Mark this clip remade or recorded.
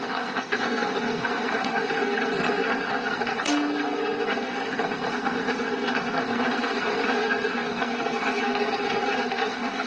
remade